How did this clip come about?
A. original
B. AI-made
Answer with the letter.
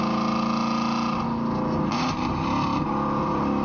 A